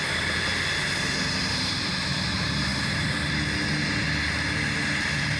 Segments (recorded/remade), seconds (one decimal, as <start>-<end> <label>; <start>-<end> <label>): 0.0-0.5 remade; 0.5-1.5 recorded; 1.5-2.7 remade; 2.7-5.0 recorded; 5.0-5.4 remade